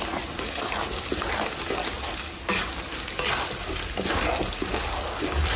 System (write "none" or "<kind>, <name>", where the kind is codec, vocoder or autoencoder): none